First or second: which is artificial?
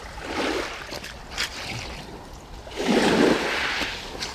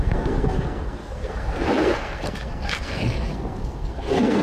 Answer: second